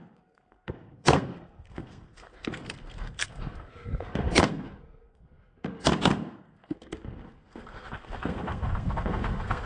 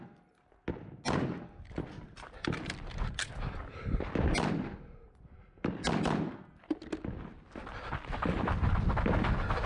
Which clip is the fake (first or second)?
first